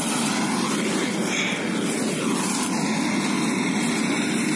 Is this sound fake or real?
real